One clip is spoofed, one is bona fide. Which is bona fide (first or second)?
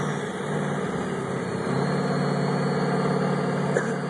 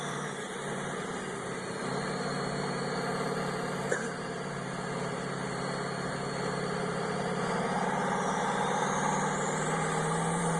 first